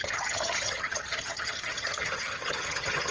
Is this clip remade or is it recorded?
remade